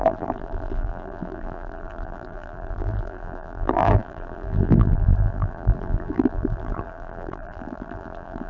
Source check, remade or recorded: remade